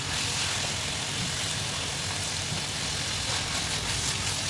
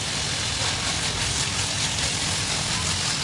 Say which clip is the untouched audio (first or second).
first